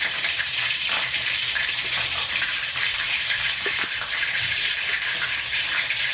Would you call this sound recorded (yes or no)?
no